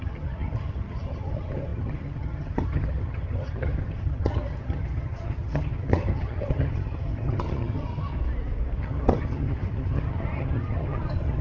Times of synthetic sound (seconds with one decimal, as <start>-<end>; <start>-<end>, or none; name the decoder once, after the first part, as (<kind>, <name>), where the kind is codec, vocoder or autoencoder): 0.0-8.2 (vocoder, HiFi-GAN); 8.8-11.4